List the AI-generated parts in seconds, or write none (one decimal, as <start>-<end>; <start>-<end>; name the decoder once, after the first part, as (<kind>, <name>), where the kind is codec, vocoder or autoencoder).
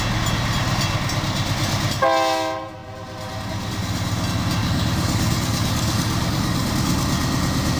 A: 4.6-6.7 (codec, DAC)